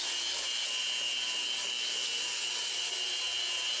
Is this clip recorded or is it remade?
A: recorded